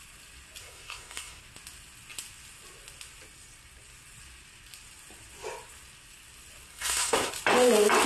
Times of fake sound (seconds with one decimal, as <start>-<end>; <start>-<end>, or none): 0.6-1.4; 6.7-7.3

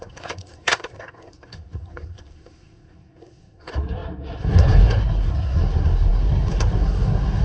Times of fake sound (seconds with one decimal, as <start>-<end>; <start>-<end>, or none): 0.0-7.4